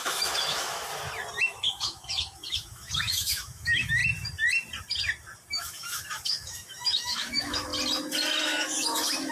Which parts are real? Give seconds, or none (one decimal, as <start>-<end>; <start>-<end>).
0.9-1.4; 4.0-5.5; 7.7-8.4